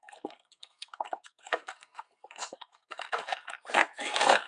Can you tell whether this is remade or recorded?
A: remade